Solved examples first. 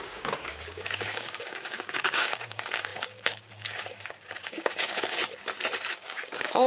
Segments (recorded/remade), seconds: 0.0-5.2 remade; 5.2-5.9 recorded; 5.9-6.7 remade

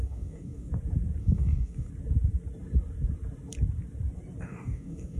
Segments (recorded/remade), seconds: 0.0-0.7 remade; 0.7-1.2 recorded; 1.2-1.9 remade; 1.9-4.4 recorded; 4.4-5.2 remade

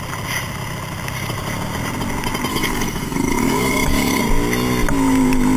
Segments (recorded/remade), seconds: 0.0-2.5 recorded; 2.5-4.2 remade; 4.2-5.6 recorded

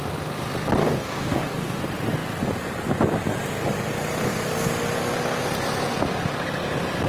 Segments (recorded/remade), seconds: 0.0-0.8 recorded; 0.8-1.8 remade; 1.8-7.1 recorded

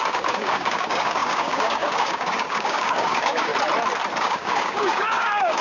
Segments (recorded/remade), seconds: 0.0-3.5 remade; 3.5-4.2 recorded; 4.2-5.6 remade